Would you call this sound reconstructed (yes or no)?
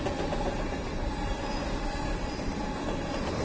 no